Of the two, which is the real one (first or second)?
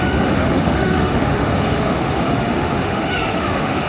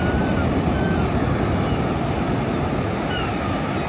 second